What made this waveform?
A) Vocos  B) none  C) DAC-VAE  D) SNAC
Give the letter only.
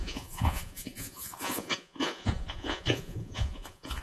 A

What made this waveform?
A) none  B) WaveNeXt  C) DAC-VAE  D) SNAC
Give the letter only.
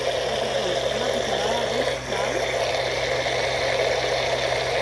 A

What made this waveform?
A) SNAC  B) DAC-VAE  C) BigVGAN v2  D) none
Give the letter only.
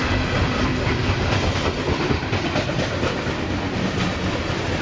D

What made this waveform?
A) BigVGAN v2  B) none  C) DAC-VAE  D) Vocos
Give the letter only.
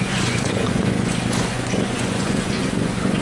D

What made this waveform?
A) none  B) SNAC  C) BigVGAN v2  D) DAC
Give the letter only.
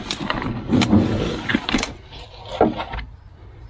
A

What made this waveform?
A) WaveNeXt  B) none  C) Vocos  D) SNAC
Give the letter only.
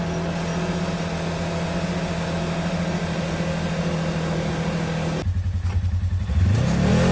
B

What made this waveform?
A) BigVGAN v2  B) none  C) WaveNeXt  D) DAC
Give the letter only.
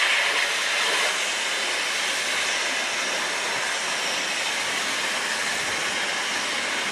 B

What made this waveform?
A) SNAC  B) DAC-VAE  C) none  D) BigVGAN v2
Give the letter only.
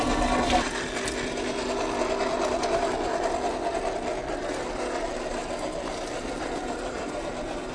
C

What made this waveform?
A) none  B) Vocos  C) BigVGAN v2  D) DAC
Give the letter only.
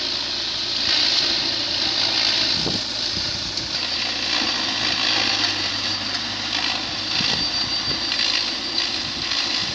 A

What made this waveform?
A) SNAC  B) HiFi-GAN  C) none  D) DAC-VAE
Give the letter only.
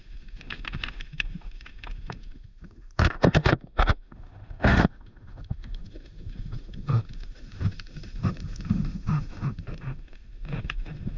D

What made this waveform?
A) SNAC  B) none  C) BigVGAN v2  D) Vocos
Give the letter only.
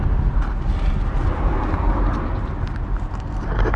B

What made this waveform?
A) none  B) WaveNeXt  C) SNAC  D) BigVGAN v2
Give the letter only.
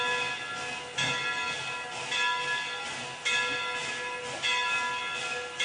A